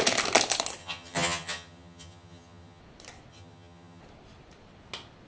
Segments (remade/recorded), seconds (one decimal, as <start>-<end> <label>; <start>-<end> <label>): 0.0-0.8 recorded; 0.8-2.8 remade; 2.8-3.3 recorded; 3.3-4.0 remade; 4.0-5.3 recorded